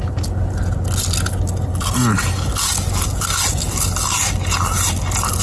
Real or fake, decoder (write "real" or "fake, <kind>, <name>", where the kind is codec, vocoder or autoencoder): real